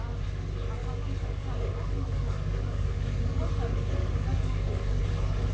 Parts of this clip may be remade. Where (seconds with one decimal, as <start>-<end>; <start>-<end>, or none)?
0.8-3.4; 4.0-5.0